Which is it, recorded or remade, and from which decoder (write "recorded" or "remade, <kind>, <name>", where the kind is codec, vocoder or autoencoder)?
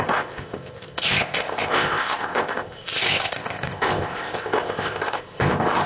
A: remade, codec, ZipCodec